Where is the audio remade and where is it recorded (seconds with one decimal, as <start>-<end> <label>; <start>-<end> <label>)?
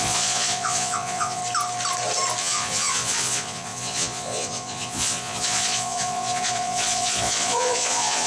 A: 0.0-1.4 remade; 1.4-2.4 recorded; 2.4-8.3 remade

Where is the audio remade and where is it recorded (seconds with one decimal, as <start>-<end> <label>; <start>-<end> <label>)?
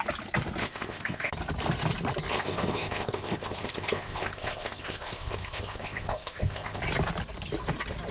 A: 0.0-0.6 recorded; 0.6-1.3 remade; 1.3-2.3 recorded; 2.3-6.8 remade; 6.8-8.1 recorded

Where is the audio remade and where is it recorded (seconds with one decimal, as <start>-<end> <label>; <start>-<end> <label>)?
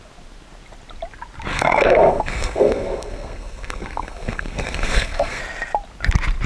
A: 0.0-1.5 recorded; 1.5-5.4 remade; 5.4-6.5 recorded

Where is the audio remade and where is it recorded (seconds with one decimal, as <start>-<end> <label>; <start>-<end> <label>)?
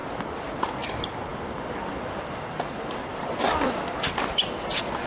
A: 0.0-0.6 remade; 0.6-1.3 recorded; 1.3-2.4 remade; 2.4-3.1 recorded; 3.1-4.4 remade; 4.4-5.1 recorded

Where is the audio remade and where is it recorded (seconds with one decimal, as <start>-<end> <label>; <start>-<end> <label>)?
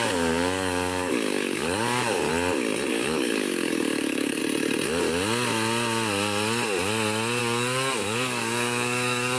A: 0.0-2.3 remade; 2.3-2.9 recorded; 2.9-4.4 remade; 4.4-7.4 recorded; 7.4-9.4 remade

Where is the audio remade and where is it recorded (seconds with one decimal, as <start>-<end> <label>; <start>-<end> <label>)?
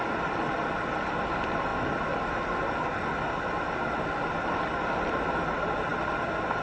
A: 0.0-6.6 recorded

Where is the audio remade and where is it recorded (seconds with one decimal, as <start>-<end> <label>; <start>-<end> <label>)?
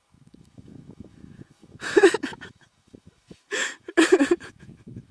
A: 0.0-5.1 remade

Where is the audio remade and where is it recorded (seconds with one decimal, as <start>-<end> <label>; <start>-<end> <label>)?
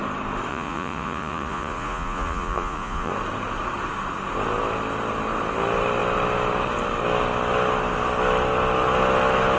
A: 0.0-0.5 recorded; 0.5-3.1 remade; 3.1-9.6 recorded